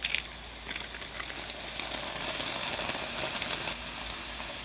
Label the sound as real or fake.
real